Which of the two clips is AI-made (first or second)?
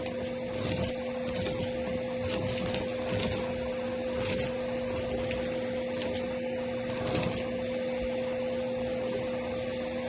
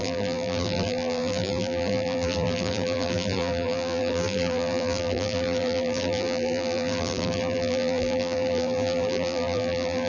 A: second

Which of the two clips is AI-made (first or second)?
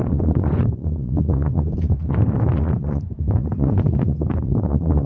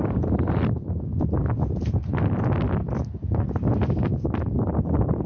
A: first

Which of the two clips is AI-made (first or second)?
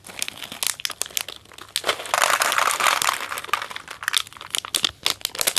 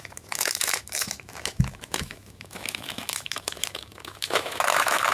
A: second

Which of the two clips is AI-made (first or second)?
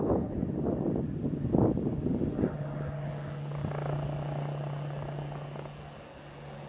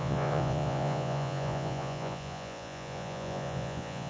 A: second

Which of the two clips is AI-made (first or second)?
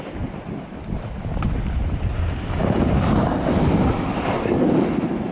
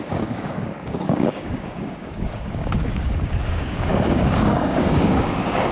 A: second